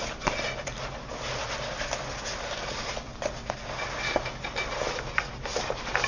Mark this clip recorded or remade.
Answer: recorded